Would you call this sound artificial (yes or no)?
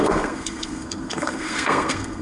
yes